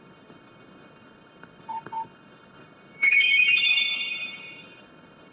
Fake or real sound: fake